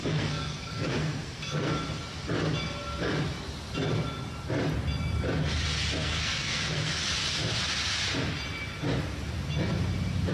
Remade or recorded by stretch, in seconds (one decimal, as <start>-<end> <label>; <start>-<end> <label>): 0.0-1.7 remade; 1.7-6.0 recorded; 6.0-7.0 remade; 7.0-10.3 recorded